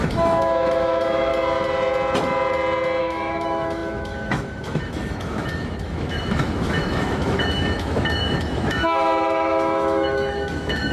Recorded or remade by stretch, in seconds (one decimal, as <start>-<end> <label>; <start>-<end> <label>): 0.0-1.3 remade; 1.3-3.0 recorded; 3.0-10.9 remade